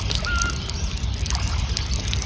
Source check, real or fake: real